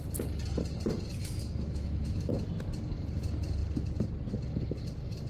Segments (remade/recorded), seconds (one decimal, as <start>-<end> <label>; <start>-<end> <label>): 0.0-1.2 recorded; 1.2-2.3 remade; 2.3-5.3 recorded

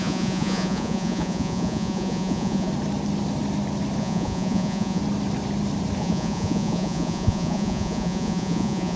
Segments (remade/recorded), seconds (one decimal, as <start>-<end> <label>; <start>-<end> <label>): 0.0-2.7 remade; 2.7-4.0 recorded; 4.0-5.0 remade; 5.0-6.0 recorded; 6.0-9.0 remade